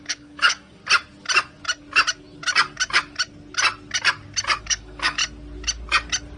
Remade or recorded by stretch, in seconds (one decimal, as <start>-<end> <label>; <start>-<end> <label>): 0.0-0.8 remade; 0.8-4.6 recorded; 4.6-5.2 remade; 5.2-6.4 recorded